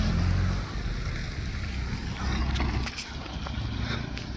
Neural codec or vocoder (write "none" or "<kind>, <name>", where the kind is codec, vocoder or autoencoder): none